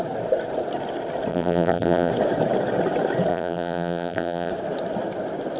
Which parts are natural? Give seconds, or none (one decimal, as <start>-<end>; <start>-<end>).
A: 0.0-1.3; 2.1-3.3; 4.5-5.6